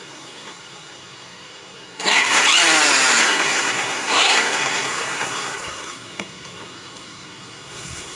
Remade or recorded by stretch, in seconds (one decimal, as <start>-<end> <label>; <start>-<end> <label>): 0.0-2.4 remade; 2.4-3.2 recorded; 3.2-8.2 remade